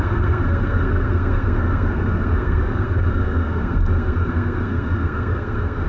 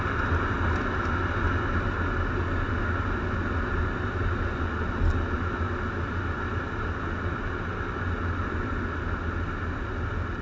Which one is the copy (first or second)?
first